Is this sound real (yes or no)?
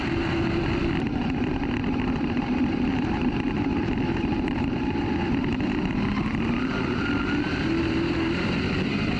yes